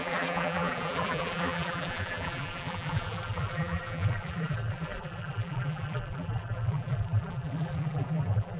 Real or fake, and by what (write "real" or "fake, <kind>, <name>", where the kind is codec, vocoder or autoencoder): fake, vocoder, BigVGAN v2